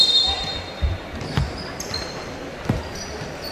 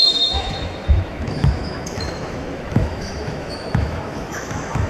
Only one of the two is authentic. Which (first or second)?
first